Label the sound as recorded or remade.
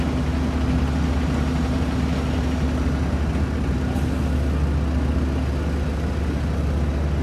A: recorded